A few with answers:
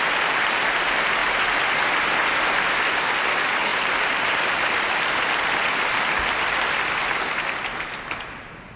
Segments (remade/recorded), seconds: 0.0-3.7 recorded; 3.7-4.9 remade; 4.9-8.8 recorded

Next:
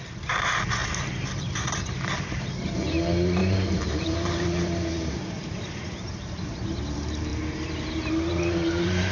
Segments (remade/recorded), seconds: 0.0-9.1 remade

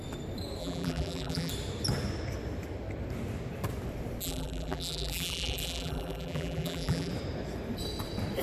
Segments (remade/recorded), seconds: 0.0-0.6 recorded; 0.6-1.5 remade; 1.5-4.2 recorded; 4.2-7.1 remade; 7.1-8.4 recorded

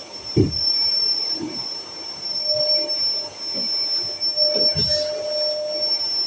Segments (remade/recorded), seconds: 0.0-2.7 remade; 2.7-4.4 recorded; 4.4-4.9 remade; 4.9-6.3 recorded

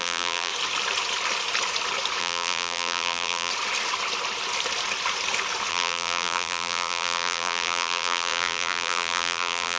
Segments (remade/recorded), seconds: 0.0-0.5 remade; 0.5-2.2 recorded; 2.2-3.5 remade; 3.5-5.7 recorded; 5.7-9.8 remade

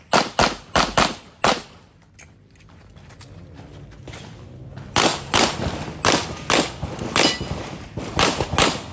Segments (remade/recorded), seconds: 0.0-5.1 recorded; 5.1-5.6 remade; 5.6-8.9 recorded

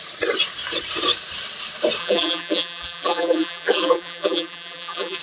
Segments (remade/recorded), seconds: 0.0-2.0 recorded; 2.0-5.2 remade